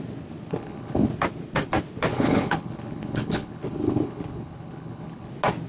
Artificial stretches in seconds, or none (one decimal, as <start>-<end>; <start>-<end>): 0.5-1.1; 2.1-5.3